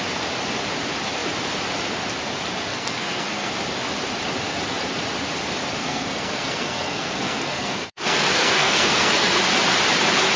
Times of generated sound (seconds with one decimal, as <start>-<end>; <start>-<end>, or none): 2.7-3.5; 5.8-9.4